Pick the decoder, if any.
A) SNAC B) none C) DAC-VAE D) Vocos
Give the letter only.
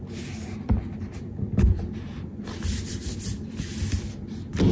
B